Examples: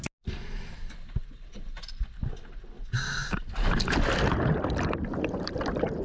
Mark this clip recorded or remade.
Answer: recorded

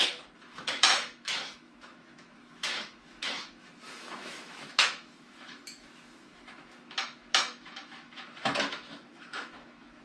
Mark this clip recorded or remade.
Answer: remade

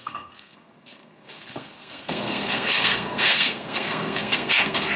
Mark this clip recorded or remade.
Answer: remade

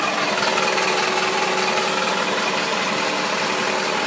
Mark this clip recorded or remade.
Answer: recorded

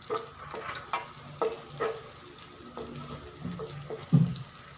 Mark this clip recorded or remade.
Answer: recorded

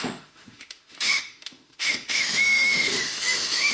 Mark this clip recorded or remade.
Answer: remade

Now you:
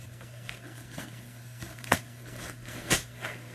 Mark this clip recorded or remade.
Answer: remade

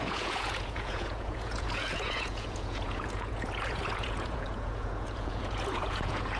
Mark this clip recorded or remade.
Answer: remade